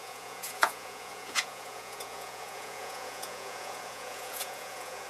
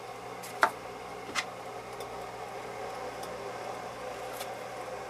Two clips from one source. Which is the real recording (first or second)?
second